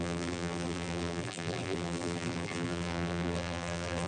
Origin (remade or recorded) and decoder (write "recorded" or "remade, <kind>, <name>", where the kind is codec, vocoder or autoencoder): remade, vocoder, BigVGAN v2